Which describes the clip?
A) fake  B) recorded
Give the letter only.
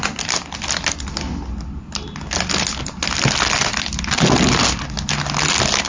B